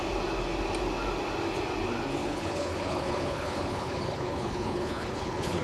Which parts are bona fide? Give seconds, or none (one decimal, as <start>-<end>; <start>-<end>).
0.0-2.2